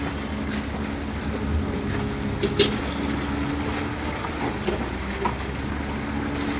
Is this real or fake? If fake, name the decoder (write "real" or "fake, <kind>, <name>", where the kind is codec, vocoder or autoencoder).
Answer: real